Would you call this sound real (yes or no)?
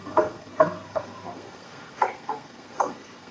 no